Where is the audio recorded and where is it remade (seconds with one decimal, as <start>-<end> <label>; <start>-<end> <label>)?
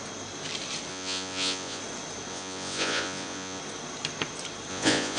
0.0-0.9 recorded; 0.9-1.8 remade; 1.8-2.3 recorded; 2.3-3.6 remade; 3.6-4.7 recorded; 4.7-5.2 remade